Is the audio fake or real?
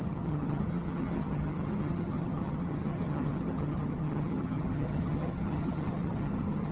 fake